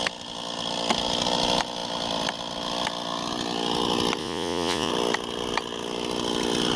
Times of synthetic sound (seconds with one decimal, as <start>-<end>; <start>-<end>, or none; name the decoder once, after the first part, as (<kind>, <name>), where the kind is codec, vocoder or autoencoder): 4.2-4.9 (vocoder, Vocos)